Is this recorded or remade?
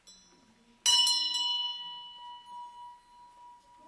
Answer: recorded